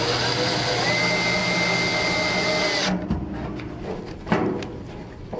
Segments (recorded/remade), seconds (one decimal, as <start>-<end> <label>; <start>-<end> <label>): 0.0-5.4 recorded